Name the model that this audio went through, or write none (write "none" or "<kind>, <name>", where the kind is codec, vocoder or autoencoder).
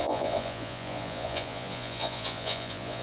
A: vocoder, Vocos